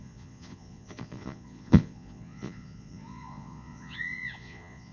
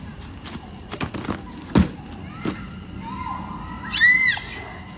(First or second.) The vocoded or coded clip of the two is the first